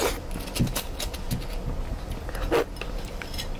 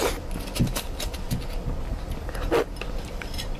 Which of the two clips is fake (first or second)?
second